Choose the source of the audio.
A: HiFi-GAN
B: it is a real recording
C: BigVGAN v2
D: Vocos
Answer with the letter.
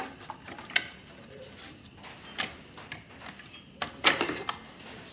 B